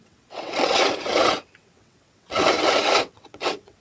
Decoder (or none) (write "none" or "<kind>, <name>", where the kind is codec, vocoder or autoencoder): vocoder, WaveNeXt